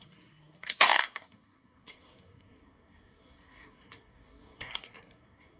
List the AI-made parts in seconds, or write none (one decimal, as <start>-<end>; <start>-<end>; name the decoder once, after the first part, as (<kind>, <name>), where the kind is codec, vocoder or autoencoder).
0.0-5.6 (codec, SNAC)